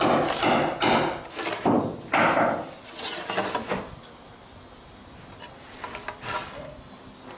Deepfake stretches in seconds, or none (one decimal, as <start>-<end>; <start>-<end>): none